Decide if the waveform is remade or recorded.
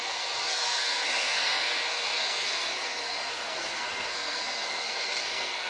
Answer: remade